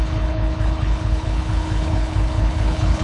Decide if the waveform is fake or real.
fake